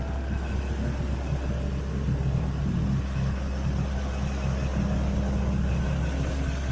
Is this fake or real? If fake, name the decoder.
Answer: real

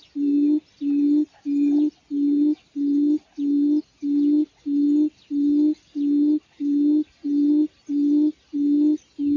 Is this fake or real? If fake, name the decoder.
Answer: real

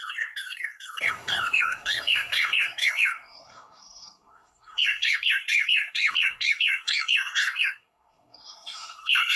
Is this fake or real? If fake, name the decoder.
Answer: fake, codec, SNAC